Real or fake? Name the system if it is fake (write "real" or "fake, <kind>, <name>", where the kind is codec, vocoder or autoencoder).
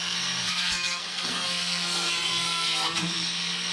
fake, codec, SNAC